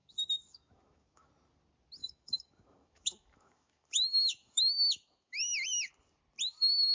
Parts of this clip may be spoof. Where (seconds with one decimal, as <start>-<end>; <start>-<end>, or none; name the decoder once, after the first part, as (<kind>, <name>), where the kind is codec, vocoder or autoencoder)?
0.0-1.3 (autoencoder, DAC-VAE); 2.0-5.9